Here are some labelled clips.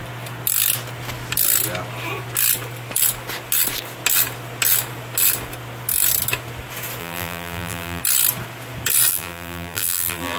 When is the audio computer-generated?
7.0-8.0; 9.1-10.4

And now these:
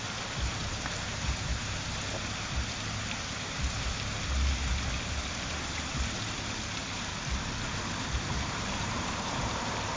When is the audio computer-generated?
0.0-7.1; 7.7-10.0

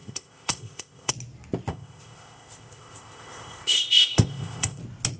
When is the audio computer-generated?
0.0-1.1; 1.7-4.8

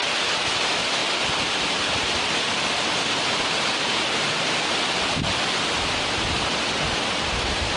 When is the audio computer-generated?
none